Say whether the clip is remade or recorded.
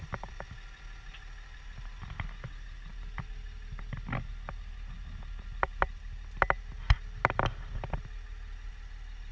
recorded